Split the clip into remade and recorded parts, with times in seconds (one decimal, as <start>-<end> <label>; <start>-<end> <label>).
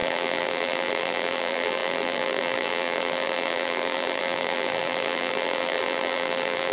0.0-6.7 remade